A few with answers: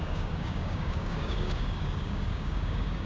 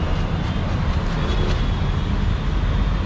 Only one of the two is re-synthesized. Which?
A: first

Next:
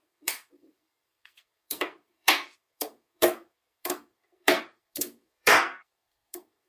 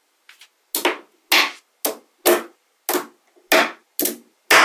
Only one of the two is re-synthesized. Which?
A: first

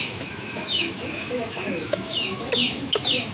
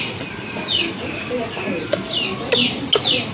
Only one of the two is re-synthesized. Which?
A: first